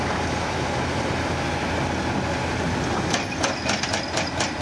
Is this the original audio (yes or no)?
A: yes